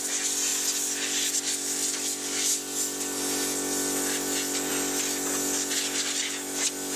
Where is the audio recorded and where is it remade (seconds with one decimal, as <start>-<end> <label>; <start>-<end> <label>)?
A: 0.0-7.0 recorded